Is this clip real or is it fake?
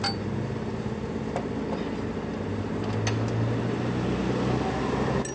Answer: real